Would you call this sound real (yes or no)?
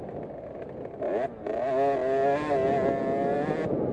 yes